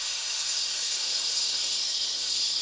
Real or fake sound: fake